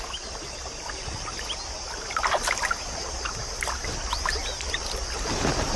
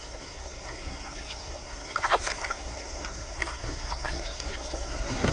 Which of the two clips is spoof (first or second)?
second